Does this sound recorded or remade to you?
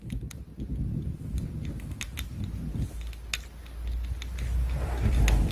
recorded